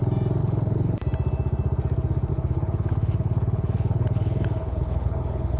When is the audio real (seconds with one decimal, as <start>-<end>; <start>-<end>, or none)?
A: 0.0-0.4; 1.0-2.3